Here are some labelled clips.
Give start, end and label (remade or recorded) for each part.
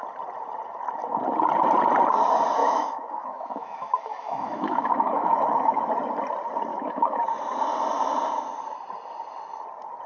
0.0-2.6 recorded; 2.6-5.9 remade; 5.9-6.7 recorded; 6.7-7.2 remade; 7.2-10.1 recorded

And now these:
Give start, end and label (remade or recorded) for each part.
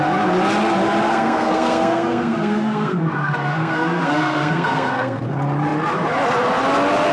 0.0-1.1 recorded; 1.1-5.2 remade; 5.2-7.1 recorded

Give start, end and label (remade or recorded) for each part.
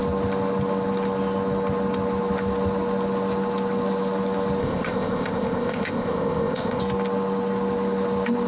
0.0-4.6 recorded; 4.6-6.8 remade; 6.8-8.5 recorded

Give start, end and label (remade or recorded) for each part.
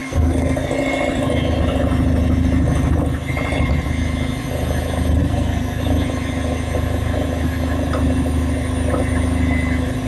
0.0-0.7 remade; 0.7-5.2 recorded; 5.2-5.8 remade; 5.8-10.1 recorded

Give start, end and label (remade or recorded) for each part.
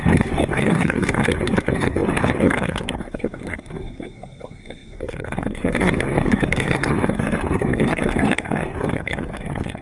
0.0-9.8 remade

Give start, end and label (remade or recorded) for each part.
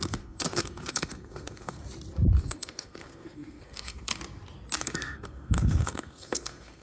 0.0-1.8 remade; 1.8-2.4 recorded; 2.4-4.1 remade; 4.1-4.8 recorded; 4.8-6.8 remade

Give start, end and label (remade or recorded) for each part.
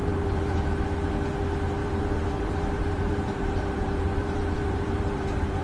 0.0-0.8 remade; 0.8-1.8 recorded; 1.8-5.6 remade